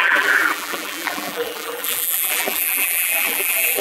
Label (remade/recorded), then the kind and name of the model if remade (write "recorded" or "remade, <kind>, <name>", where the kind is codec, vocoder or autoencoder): remade, vocoder, BigVGAN v2